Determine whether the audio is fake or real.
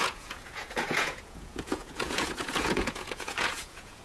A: fake